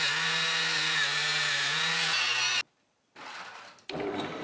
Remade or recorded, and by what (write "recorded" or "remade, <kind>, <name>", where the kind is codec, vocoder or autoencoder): recorded